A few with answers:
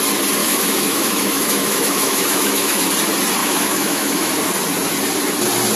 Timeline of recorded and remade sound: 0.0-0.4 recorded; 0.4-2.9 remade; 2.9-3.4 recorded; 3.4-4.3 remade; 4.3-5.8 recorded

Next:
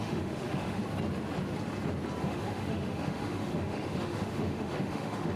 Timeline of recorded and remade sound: 0.0-0.8 remade; 0.8-2.2 recorded; 2.2-5.4 remade

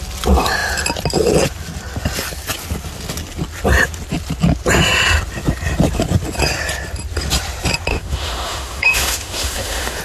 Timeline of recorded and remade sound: 0.0-7.9 recorded; 7.9-10.0 remade

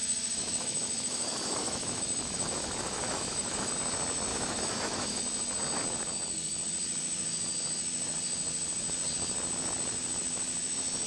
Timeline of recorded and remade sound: 0.0-3.7 remade; 3.7-4.3 recorded; 4.3-5.2 remade; 5.2-11.1 recorded

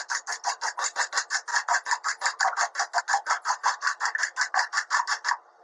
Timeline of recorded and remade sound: 0.0-5.6 recorded

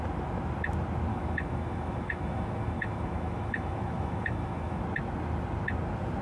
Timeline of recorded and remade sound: 0.0-1.1 recorded; 1.1-4.8 remade; 4.8-6.2 recorded

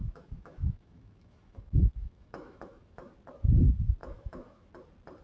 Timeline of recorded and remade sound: 0.0-3.1 remade; 3.1-4.0 recorded; 4.0-4.7 remade; 4.7-5.2 recorded

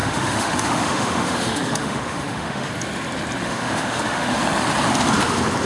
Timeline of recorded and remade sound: 0.0-2.7 remade; 2.7-3.4 recorded; 3.4-4.4 remade; 4.4-5.7 recorded